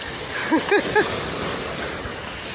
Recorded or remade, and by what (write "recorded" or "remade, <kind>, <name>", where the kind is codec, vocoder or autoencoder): recorded